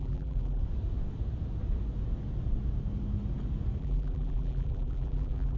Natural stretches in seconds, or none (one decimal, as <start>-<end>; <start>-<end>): 0.6-3.8